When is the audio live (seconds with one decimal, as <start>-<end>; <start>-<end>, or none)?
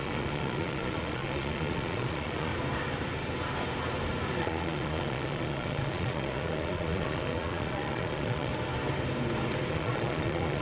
2.5-4.4; 8.5-9.7